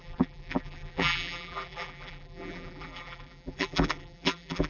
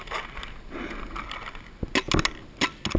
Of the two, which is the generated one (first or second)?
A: first